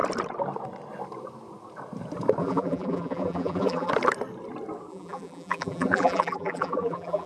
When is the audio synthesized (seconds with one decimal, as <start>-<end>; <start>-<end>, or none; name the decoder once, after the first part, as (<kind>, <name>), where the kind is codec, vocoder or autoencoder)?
2.4-3.9 (vocoder, BigVGAN v2); 4.9-7.3